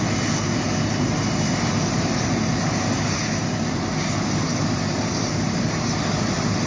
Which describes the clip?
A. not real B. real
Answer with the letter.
B